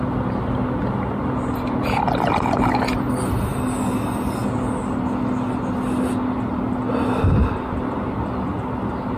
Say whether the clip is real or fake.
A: real